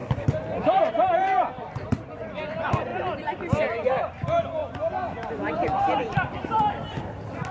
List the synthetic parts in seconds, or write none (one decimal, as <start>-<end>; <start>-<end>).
0.0-0.8; 4.6-6.5